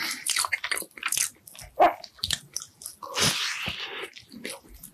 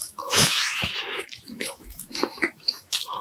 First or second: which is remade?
second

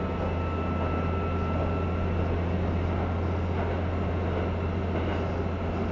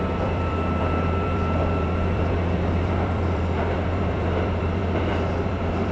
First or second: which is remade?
second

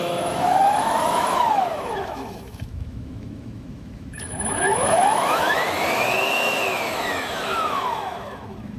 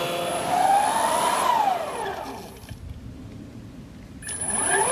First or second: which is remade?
first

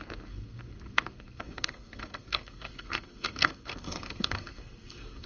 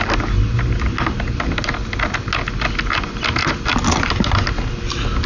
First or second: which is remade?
first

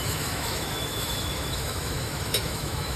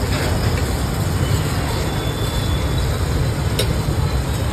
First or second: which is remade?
first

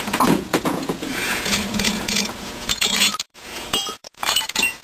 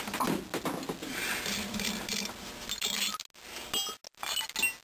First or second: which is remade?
first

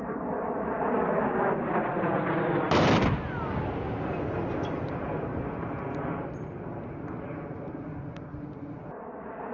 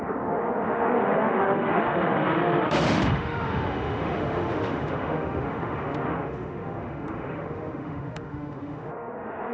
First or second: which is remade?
second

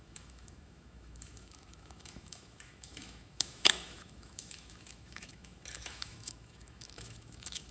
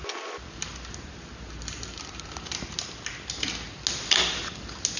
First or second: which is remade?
first